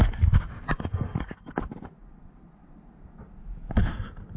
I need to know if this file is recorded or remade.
recorded